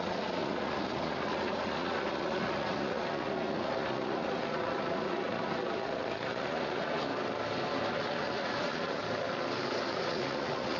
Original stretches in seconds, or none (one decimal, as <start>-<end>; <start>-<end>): 7.1-7.9; 9.0-9.9